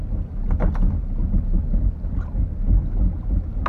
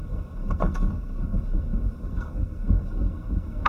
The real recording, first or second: first